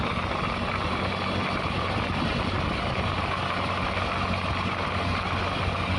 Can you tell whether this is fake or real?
real